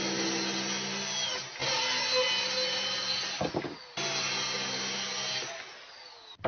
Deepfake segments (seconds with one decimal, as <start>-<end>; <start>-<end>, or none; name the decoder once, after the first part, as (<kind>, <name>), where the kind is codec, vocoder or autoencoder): none